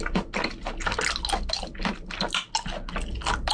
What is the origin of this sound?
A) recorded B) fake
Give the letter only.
A